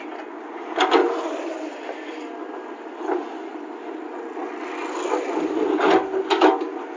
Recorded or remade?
recorded